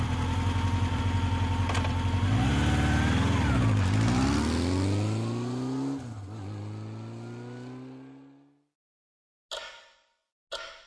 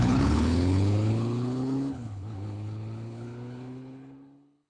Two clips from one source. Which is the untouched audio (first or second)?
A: first